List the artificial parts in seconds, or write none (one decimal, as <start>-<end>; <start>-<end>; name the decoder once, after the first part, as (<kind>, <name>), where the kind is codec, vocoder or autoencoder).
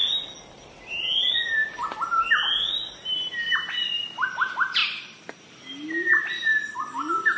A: none